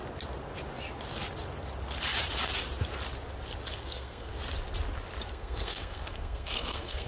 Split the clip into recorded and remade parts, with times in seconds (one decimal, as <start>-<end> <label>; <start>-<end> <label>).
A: 0.0-3.7 recorded; 3.7-4.3 remade; 4.3-5.3 recorded; 5.3-7.1 remade